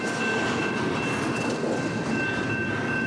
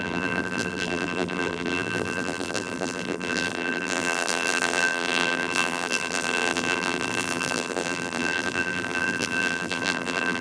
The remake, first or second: second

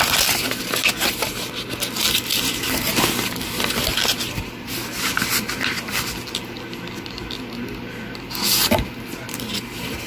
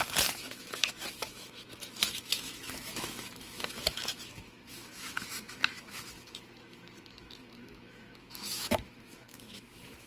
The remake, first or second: second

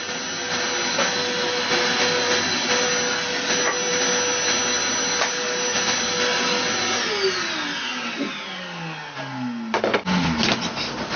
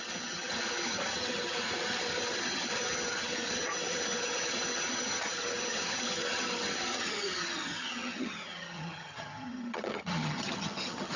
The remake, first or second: second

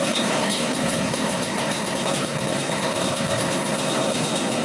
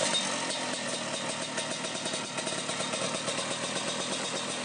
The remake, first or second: first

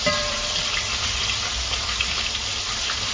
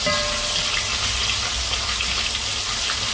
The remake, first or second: first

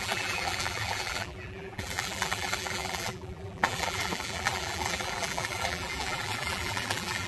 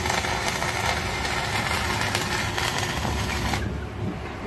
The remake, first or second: first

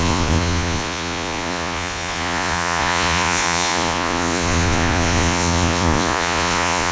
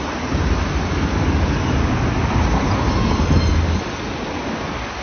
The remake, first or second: first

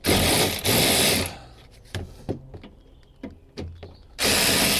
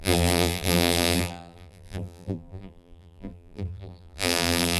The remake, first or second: second